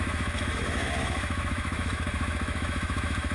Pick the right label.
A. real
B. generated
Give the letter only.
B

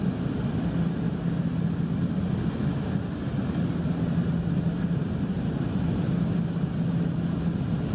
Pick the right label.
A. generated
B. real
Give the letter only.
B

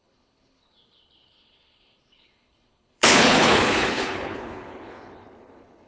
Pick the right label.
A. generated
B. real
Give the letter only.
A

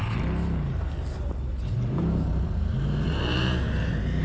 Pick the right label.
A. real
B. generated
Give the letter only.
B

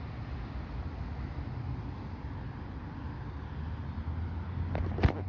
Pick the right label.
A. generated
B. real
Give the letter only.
B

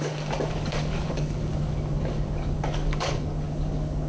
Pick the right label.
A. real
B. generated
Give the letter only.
B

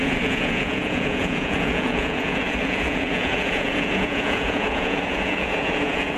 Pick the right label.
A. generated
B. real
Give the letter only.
A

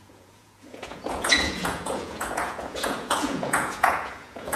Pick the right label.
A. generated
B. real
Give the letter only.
A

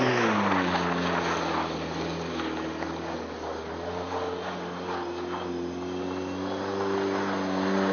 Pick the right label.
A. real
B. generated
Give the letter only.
A